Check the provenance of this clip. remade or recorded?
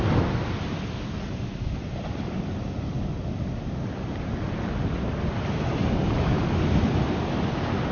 recorded